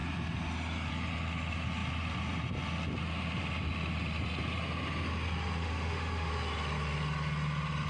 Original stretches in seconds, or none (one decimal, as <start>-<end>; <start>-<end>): 0.0-5.6; 6.3-7.9